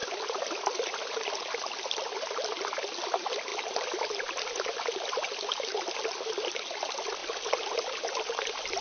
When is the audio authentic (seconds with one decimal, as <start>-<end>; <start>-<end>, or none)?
0.0-8.8

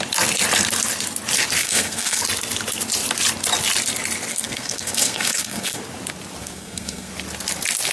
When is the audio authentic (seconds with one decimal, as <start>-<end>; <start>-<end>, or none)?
0.0-1.6; 2.2-4.3; 5.8-6.4; 7.1-7.9

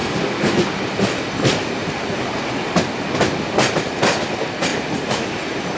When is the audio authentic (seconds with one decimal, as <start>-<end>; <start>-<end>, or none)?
0.0-4.7; 5.3-5.8

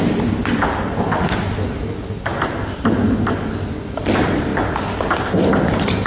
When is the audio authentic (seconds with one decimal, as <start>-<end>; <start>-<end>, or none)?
0.0-6.1